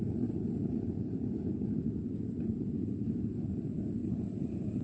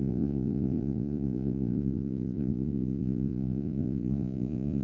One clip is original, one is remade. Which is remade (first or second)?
second